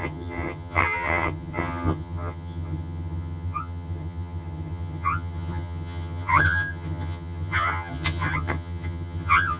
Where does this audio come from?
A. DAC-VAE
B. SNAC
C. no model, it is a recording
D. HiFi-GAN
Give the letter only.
D